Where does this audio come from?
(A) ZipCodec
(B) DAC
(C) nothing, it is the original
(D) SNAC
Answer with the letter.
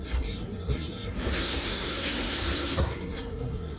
D